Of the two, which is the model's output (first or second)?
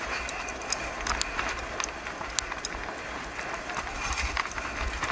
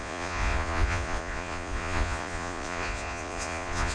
second